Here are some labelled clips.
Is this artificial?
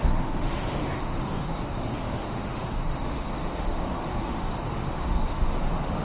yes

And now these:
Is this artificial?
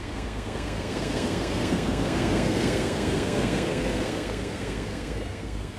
yes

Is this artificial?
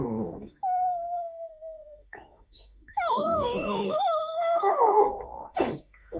yes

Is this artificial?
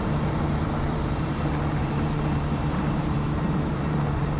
yes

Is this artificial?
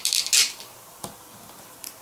no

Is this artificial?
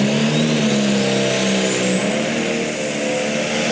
no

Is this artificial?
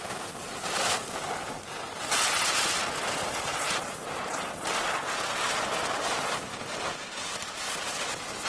no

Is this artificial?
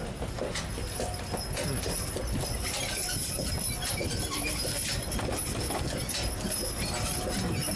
no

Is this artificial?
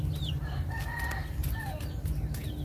no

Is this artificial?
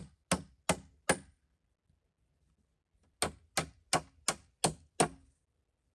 no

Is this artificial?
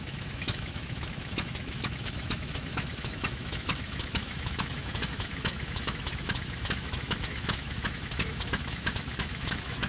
yes